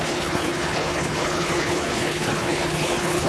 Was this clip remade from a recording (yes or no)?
yes